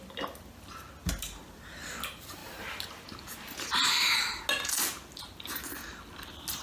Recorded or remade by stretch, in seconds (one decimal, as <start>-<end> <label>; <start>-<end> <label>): 0.0-6.6 recorded